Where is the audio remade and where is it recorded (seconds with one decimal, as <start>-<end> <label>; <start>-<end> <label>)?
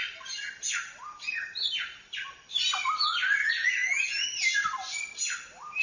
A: 0.0-5.8 recorded